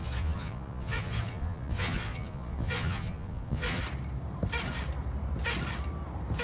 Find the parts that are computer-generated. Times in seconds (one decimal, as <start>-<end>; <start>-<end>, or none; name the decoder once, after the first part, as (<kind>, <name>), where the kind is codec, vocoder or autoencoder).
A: 0.0-3.8 (vocoder, Vocos)